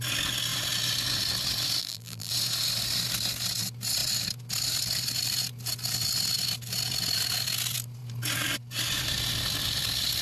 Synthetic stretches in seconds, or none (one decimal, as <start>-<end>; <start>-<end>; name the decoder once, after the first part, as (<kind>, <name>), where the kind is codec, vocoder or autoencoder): 1.8-2.3 (vocoder, BigVGAN v2)